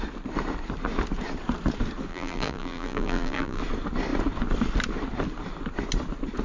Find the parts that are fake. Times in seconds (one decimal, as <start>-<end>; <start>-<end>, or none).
2.1-3.6